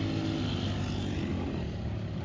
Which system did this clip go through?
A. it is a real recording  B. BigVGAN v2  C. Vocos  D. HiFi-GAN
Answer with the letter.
A